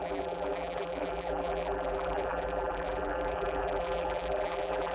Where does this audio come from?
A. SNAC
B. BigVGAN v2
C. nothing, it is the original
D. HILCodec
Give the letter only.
B